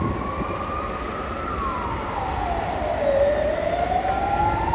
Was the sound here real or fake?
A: real